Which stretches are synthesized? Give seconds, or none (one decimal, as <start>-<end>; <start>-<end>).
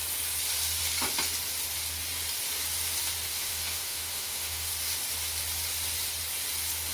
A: 3.3-4.7